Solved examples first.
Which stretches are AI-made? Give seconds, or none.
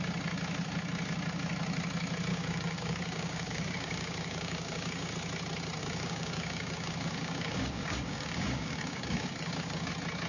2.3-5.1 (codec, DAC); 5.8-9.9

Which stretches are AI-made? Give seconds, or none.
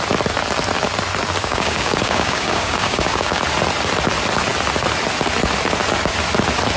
1.4-3.4 (codec, DAC)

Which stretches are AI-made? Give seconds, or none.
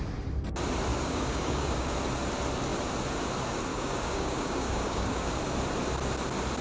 0.9-1.9 (codec, DAC); 3.7-5.4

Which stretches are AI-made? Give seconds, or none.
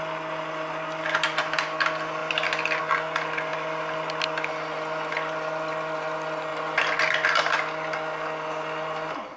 none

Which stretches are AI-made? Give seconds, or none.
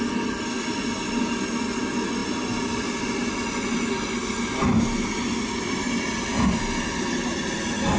none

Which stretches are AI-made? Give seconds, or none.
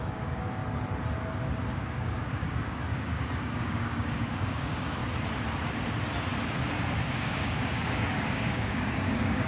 0.0-0.6 (codec, DAC); 1.7-5.0; 7.0-9.5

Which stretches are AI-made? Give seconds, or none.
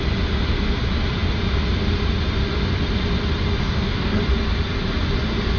3.6-4.2 (codec, DAC)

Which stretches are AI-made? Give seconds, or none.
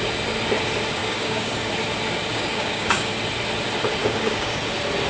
1.0-1.7 (codec, DAC); 2.3-3.1; 4.0-4.6